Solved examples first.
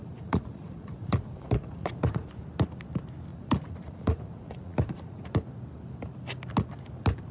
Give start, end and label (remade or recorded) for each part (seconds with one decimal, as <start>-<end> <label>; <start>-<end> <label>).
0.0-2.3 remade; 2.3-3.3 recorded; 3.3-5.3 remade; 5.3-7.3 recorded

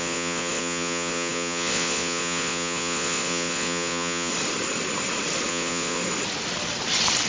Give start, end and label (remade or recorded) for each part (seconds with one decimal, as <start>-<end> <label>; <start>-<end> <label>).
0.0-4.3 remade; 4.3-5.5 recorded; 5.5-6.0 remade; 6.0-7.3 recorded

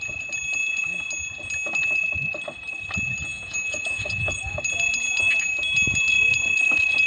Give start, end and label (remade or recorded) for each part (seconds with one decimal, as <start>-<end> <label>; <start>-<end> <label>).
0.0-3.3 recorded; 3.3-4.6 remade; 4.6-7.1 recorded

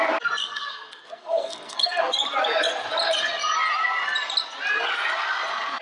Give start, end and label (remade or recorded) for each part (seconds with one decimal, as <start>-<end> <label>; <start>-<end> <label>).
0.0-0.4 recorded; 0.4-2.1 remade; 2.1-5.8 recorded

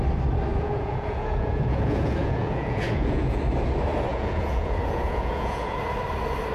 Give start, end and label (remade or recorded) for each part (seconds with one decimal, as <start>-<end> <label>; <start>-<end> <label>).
0.0-0.5 recorded; 0.5-3.4 remade; 3.4-4.1 recorded; 4.1-5.8 remade; 5.8-6.5 recorded

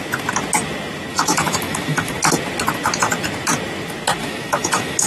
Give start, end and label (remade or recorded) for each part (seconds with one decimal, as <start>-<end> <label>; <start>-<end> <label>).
0.0-1.1 recorded; 1.1-2.1 remade; 2.1-4.2 recorded; 4.2-5.1 remade

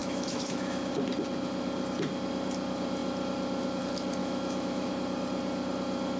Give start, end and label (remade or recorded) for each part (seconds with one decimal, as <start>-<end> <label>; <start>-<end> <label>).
0.0-0.9 remade; 0.9-4.2 recorded; 4.2-4.9 remade; 4.9-6.2 recorded